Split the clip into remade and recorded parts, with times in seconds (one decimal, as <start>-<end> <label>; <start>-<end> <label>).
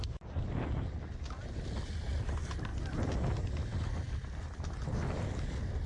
0.0-5.9 recorded